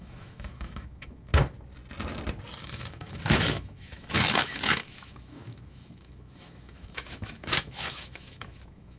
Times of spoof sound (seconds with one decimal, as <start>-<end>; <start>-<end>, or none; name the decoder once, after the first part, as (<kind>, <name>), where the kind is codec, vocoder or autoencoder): 0.0-1.3 (autoencoder, DAC-VAE); 2.6-9.0